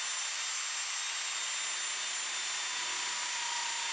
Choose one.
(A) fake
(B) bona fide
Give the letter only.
B